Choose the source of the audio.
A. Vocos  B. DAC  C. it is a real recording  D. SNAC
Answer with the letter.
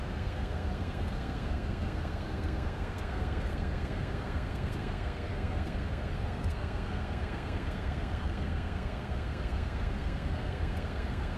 D